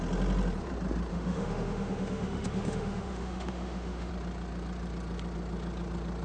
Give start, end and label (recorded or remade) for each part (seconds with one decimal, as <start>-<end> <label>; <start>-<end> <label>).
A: 0.0-1.1 recorded; 1.1-4.1 remade; 4.1-6.2 recorded